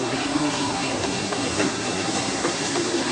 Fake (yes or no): yes